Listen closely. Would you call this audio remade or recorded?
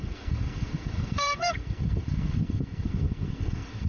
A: remade